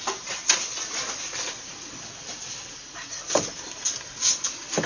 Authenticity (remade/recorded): recorded